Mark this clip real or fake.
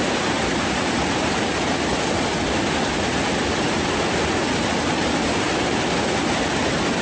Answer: real